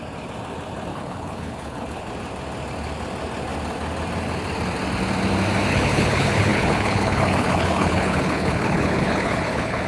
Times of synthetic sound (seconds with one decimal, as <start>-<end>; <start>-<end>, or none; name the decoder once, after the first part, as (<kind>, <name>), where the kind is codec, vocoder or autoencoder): 0.9-2.1 (codec, HILCodec); 5.7-9.9